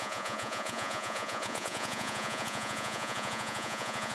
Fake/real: fake